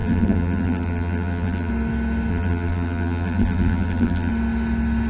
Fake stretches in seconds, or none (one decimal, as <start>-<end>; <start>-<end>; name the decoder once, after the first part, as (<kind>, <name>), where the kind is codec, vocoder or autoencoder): 0.0-1.7 (vocoder, BigVGAN v2); 2.3-4.3